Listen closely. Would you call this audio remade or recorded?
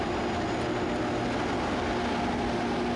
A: recorded